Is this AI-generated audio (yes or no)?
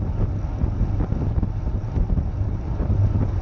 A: no